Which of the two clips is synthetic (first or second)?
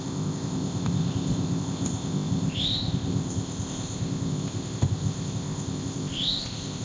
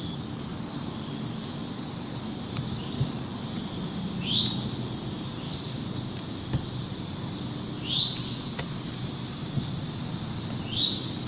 first